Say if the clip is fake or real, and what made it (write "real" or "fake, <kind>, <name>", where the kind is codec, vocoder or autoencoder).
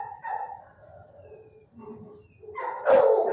real